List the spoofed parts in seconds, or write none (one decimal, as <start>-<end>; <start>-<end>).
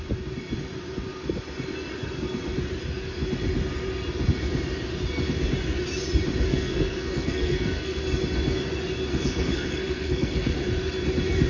6.5-8.0; 9.1-10.6